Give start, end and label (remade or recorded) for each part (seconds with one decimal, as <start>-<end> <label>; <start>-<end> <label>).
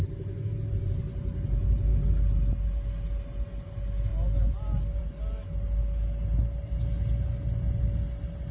0.0-8.5 recorded